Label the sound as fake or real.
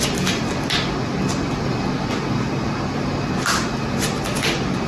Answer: real